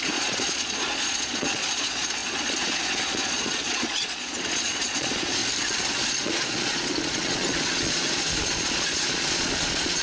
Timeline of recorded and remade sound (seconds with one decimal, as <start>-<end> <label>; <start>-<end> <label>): 0.0-5.4 remade; 5.4-6.1 recorded; 6.1-10.0 remade